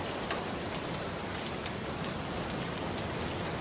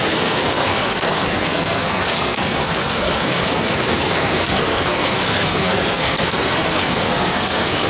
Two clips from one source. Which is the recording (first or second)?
first